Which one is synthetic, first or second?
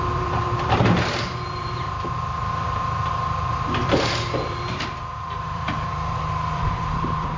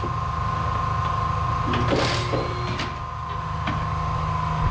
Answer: first